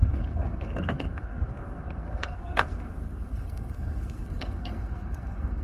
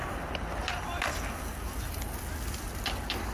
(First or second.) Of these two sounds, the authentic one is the second